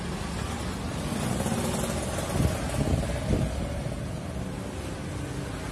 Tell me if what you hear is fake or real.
real